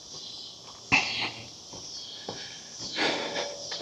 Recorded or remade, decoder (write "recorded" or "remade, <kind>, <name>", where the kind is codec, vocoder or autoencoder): recorded